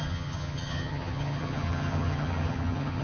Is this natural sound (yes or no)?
no